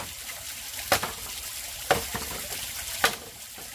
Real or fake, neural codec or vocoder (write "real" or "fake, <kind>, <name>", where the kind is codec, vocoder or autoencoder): real